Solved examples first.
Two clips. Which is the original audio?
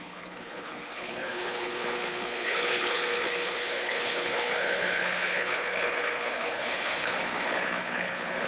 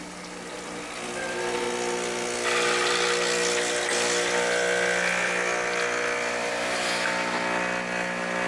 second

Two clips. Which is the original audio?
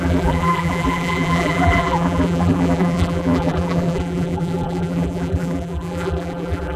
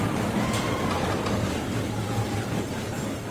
second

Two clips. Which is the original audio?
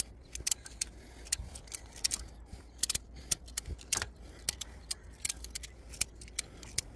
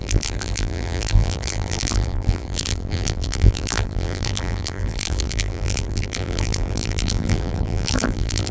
first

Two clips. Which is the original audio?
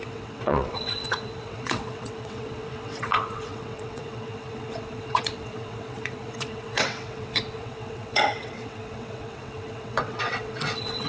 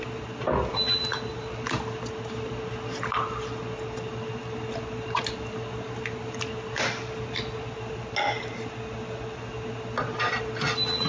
second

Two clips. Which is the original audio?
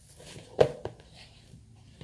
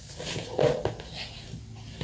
second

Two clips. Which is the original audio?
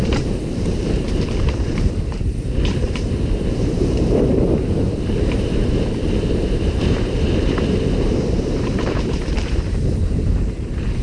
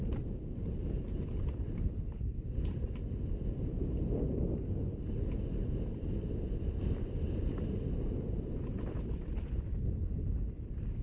second